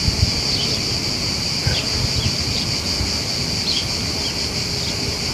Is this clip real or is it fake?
real